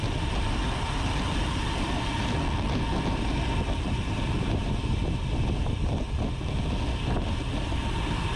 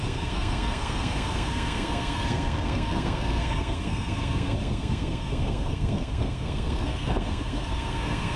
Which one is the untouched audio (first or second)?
first